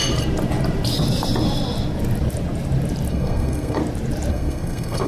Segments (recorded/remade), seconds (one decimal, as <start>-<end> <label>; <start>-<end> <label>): 0.0-3.1 recorded; 3.1-3.8 remade; 3.8-4.3 recorded; 4.3-5.1 remade